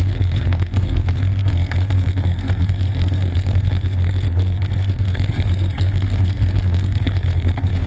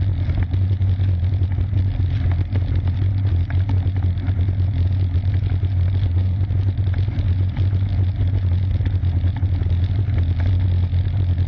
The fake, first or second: first